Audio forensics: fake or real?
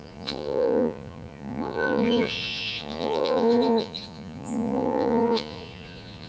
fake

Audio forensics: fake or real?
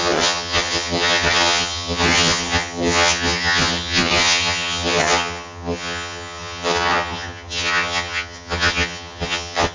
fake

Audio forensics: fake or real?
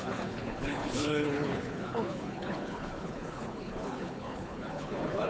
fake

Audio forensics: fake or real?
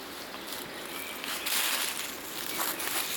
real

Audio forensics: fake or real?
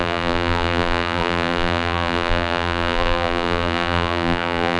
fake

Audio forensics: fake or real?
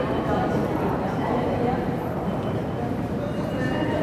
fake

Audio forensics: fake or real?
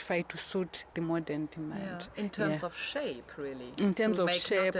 real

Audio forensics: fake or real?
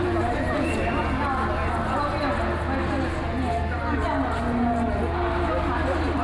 real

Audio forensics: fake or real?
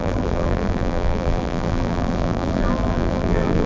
fake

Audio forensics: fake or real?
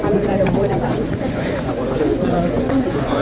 fake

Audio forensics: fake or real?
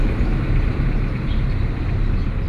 real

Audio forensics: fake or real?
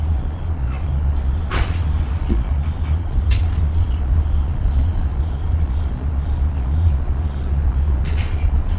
fake